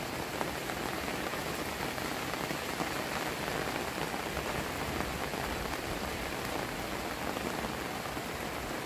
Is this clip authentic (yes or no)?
yes